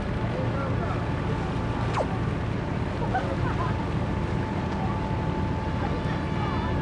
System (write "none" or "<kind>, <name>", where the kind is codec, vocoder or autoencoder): none